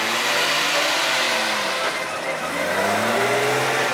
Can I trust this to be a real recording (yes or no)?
yes